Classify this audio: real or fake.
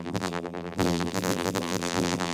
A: fake